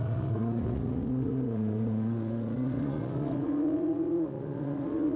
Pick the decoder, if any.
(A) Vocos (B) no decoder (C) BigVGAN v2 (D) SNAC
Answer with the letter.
A